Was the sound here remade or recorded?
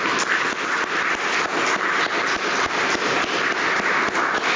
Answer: recorded